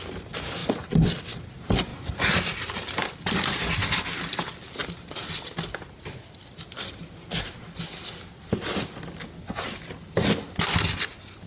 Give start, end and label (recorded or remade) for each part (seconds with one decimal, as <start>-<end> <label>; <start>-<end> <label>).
0.0-11.5 recorded